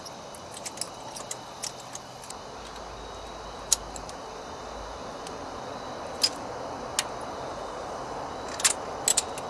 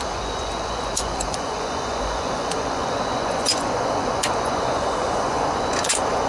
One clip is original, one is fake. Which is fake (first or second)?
second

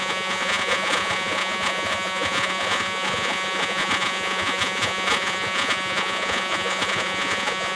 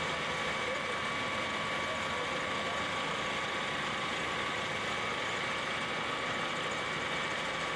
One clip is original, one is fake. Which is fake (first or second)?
first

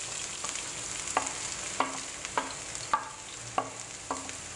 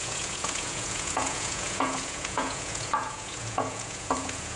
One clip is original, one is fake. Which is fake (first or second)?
second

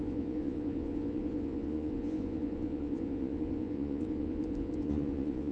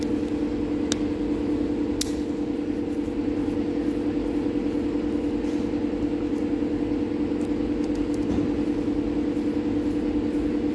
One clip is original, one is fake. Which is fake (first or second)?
first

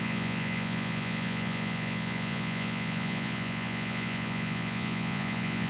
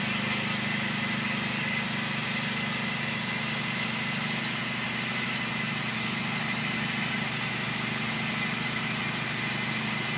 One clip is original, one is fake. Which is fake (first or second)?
first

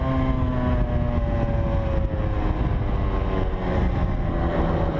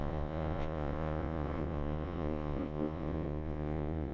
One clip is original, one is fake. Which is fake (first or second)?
second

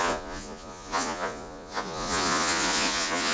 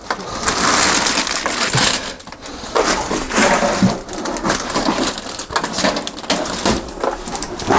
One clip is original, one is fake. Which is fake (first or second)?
first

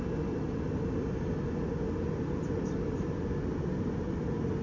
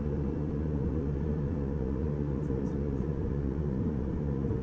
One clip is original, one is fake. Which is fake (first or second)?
second